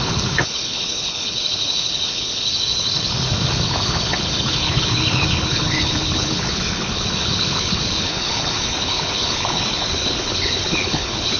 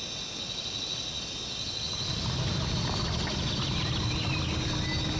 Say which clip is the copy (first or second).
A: first